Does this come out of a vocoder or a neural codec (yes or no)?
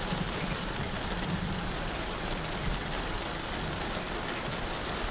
no